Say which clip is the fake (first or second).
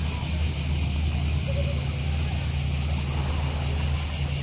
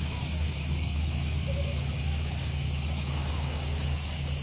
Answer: second